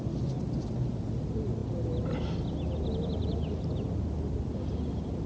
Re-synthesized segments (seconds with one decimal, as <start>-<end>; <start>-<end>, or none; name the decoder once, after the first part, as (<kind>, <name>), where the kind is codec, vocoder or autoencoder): none